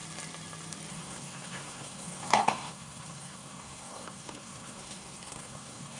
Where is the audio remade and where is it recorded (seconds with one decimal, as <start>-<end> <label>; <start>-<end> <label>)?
0.0-0.9 recorded; 0.9-6.0 remade